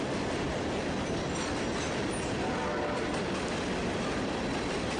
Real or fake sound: real